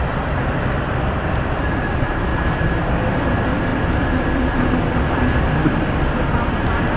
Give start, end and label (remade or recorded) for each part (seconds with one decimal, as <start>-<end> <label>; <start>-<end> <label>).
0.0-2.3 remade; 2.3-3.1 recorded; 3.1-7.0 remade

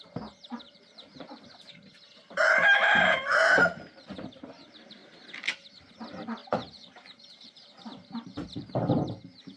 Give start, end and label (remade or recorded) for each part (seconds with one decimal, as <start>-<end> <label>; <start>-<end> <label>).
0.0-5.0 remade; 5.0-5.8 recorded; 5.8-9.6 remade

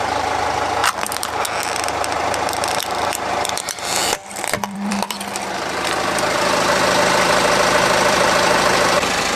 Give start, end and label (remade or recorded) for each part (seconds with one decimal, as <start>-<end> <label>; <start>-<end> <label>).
0.0-9.4 remade